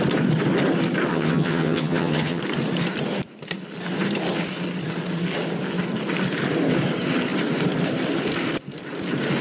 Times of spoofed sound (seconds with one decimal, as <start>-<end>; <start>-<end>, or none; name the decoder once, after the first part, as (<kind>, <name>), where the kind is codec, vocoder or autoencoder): 1.1-2.4 (vocoder, HiFi-GAN)